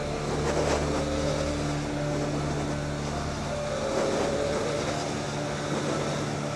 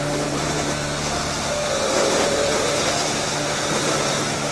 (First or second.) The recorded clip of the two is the first